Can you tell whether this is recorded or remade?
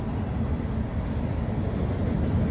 recorded